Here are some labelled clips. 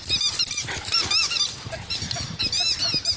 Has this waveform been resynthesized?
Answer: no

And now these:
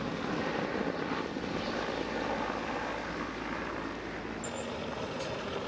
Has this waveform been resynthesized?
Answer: no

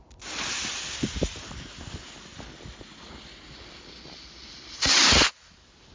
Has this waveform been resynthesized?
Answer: no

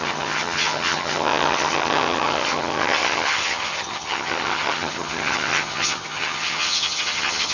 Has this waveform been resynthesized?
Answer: yes